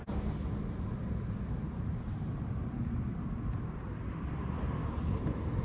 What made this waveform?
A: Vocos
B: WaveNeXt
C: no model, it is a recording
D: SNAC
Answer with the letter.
C